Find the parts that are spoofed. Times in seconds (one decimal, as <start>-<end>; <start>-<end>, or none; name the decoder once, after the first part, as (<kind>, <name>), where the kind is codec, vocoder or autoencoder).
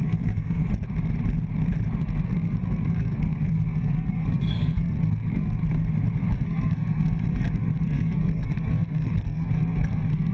0.0-0.6 (codec, SNAC); 2.0-5.6; 6.3-10.3